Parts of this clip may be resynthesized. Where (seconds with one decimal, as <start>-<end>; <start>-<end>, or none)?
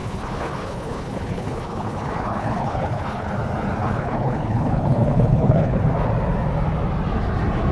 0.0-3.3; 3.8-5.8